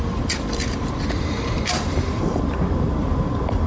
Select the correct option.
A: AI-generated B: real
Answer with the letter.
A